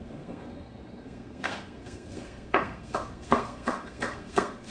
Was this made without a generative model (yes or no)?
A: no